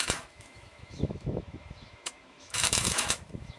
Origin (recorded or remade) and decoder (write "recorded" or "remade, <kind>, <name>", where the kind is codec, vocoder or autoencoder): remade, autoencoder, DAC-VAE